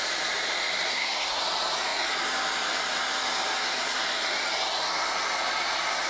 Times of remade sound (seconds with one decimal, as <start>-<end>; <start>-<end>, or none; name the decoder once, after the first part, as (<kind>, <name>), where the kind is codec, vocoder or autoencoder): 0.9-1.4 (codec, SNAC)